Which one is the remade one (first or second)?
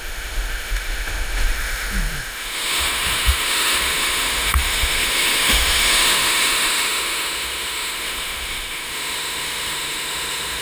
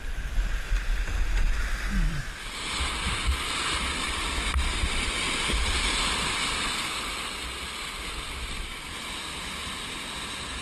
first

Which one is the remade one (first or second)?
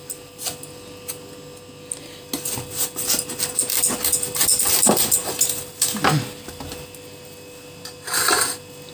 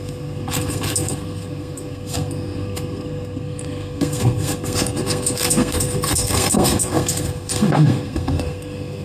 second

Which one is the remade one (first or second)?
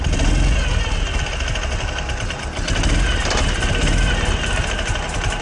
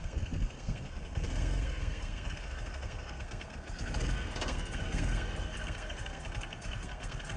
second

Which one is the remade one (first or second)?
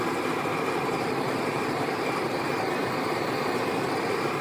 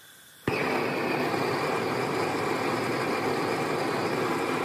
first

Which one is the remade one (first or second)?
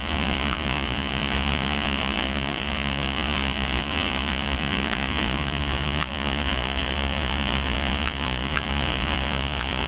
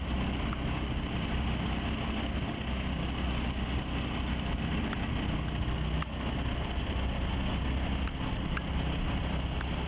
first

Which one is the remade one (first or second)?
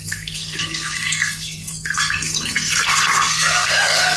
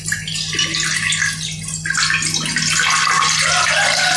first